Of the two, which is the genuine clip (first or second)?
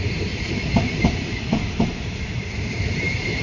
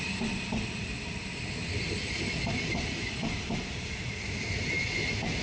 second